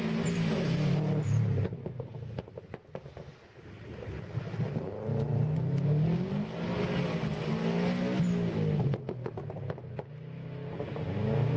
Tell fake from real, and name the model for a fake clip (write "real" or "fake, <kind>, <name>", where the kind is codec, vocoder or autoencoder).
real